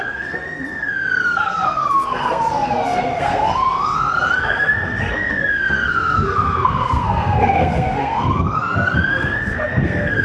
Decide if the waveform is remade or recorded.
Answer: remade